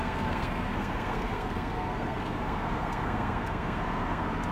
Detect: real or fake fake